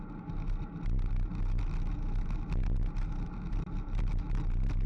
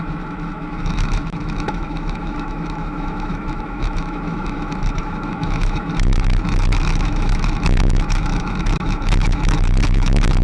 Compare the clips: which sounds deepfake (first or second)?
second